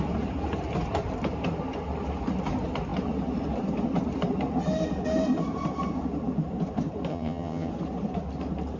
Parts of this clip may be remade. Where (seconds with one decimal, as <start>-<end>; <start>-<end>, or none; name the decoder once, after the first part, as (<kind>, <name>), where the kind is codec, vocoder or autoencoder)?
7.1-7.7 (vocoder, HiFi-GAN)